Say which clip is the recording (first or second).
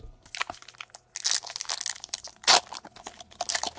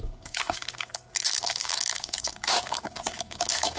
first